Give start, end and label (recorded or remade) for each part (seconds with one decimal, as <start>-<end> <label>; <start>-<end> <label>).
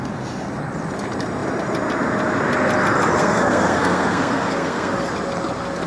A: 0.0-3.2 recorded; 3.2-5.1 remade; 5.1-5.9 recorded